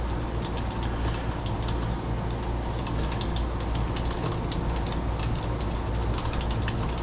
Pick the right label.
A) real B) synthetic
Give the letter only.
A